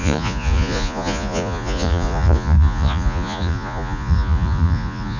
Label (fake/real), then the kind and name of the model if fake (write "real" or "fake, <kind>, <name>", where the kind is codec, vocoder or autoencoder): fake, vocoder, Vocos